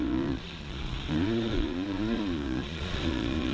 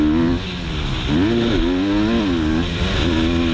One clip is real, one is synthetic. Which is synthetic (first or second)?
first